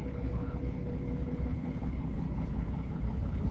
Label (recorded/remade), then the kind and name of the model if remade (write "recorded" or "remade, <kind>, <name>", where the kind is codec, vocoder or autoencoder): remade, codec, HILCodec